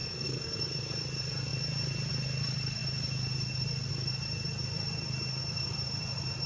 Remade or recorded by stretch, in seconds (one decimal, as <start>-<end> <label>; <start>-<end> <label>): 0.0-0.7 remade; 0.7-6.5 recorded